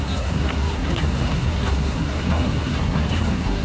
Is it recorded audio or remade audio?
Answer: remade